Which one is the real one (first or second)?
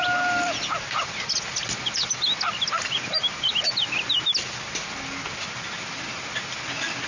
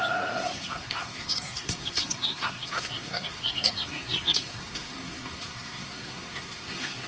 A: first